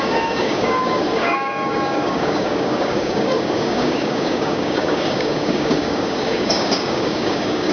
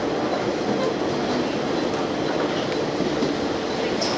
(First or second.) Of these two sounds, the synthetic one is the first